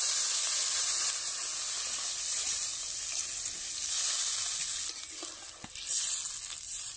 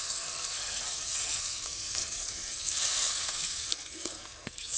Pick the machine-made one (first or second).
second